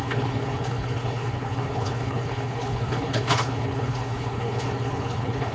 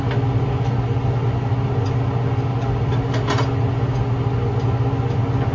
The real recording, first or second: second